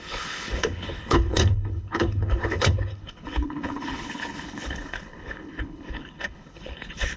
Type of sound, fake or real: fake